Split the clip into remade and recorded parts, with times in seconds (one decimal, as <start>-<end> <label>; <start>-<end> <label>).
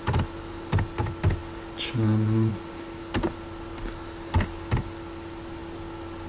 0.0-6.3 recorded